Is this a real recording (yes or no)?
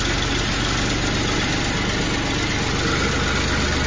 yes